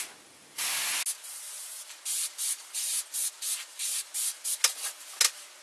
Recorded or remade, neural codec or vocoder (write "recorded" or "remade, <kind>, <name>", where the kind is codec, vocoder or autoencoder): recorded